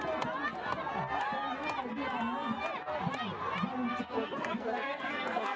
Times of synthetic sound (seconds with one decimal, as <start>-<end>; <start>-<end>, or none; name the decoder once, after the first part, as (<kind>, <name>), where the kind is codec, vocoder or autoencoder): 3.9-5.6 (codec, SNAC)